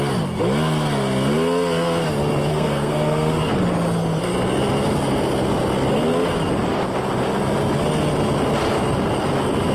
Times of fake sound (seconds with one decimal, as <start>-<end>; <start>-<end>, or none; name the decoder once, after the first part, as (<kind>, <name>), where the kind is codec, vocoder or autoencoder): 2.5-3.3 (codec, SNAC)